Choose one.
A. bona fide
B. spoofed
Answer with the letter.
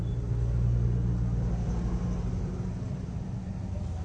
A